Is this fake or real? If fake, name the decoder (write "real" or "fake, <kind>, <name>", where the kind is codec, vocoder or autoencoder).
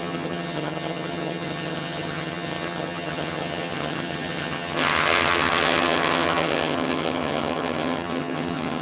fake, vocoder, HiFi-GAN